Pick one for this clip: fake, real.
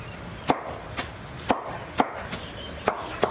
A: real